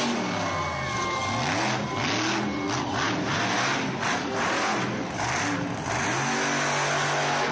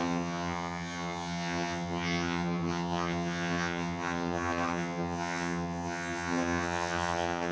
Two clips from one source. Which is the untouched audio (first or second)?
first